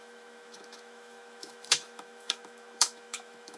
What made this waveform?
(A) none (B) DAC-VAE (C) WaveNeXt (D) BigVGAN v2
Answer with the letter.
B